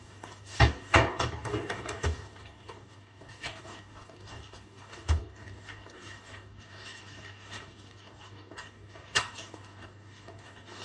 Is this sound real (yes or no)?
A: no